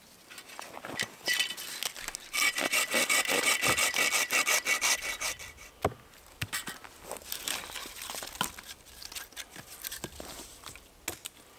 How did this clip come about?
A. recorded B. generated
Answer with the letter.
A